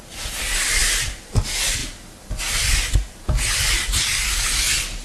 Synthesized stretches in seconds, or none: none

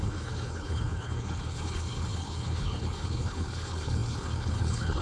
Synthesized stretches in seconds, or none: 0.0-5.0 (codec, HILCodec)

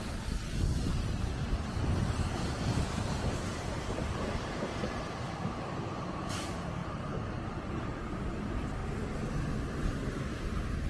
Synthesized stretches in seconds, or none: 0.0-6.8 (vocoder, BigVGAN v2); 7.7-8.8; 10.1-10.9

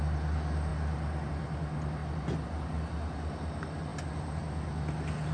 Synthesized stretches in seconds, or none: none

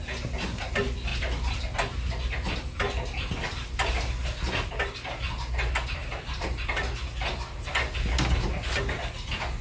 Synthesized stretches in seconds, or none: none